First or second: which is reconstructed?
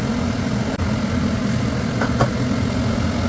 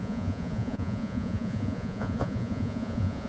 second